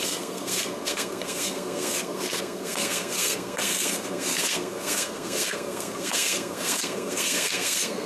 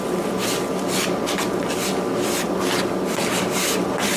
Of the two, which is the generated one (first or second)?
first